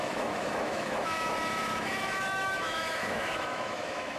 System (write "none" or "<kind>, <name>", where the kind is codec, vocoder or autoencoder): autoencoder, DAC-VAE